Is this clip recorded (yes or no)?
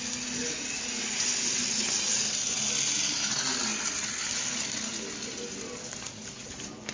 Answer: yes